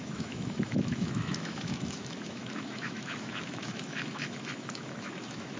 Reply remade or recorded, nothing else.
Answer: remade